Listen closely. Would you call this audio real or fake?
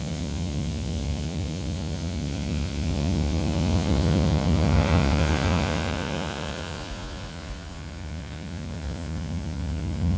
fake